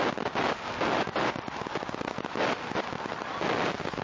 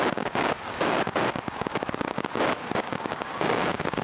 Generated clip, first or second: second